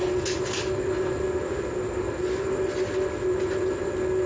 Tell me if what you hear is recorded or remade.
recorded